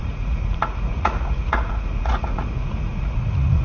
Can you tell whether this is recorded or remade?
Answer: remade